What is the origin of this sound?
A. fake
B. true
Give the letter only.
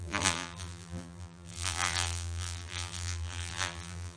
A